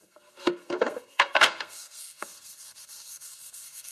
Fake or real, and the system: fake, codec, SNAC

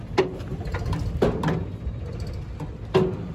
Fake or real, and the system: real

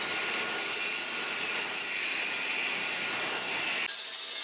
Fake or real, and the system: real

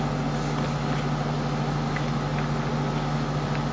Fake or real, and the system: real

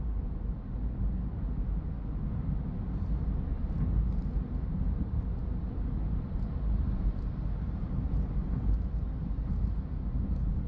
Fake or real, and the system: real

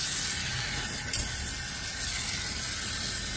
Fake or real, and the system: fake, vocoder, BigVGAN v2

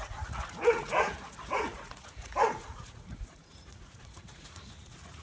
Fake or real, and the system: fake, vocoder, Vocos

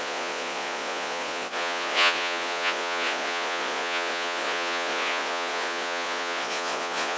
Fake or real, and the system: fake, vocoder, Vocos